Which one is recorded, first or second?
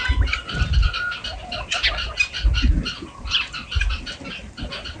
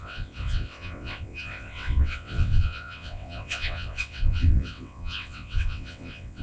first